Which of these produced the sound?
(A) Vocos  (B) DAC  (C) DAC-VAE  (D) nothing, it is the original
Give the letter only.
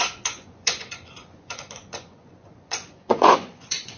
A